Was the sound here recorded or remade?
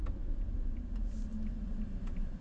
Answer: recorded